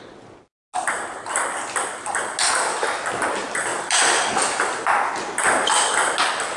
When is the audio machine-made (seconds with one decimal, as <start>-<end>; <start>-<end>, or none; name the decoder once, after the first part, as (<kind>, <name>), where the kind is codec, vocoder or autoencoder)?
none

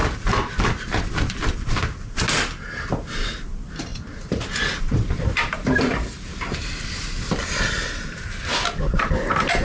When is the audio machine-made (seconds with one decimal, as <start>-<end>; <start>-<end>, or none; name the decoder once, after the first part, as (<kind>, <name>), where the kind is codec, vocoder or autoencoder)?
none

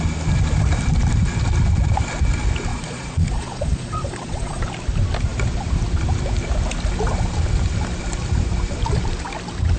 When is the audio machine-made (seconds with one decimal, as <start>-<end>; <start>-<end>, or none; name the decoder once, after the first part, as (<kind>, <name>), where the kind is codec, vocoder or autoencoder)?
2.7-4.6 (vocoder, Vocos)

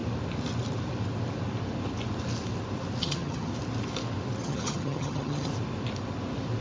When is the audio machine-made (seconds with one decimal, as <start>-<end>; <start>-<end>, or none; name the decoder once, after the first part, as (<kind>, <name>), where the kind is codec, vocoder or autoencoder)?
3.0-3.5 (vocoder, HiFi-GAN); 4.4-5.5

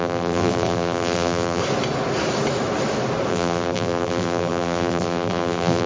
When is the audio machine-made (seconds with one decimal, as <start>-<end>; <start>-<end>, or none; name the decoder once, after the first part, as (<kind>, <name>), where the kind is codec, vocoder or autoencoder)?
0.0-1.6 (vocoder, BigVGAN v2); 3.3-5.9

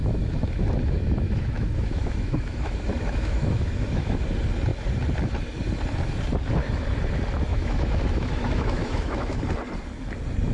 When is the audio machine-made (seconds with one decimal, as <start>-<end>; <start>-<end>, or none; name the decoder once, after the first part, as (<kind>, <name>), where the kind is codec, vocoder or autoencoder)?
0.0-4.2 (autoencoder, DAC-VAE); 7.5-9.4